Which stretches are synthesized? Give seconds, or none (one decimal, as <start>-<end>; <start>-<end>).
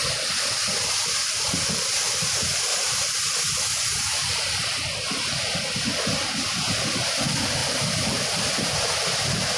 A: 2.7-3.3; 3.7-4.6; 7.6-8.9